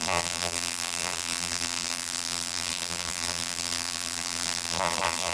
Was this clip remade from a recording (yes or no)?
yes